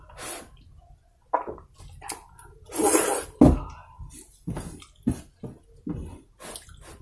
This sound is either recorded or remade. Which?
recorded